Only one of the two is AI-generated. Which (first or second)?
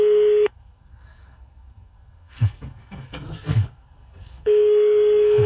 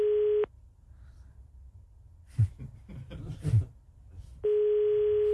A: first